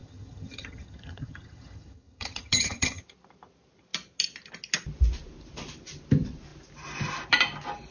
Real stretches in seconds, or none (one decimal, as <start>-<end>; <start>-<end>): 3.0-7.9